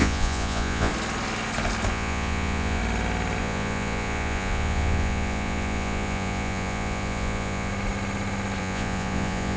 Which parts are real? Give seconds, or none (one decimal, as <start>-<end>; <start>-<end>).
0.9-1.9; 2.8-3.4; 7.7-8.6